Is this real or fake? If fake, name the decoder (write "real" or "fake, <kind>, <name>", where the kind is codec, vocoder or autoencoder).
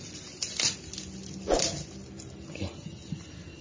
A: real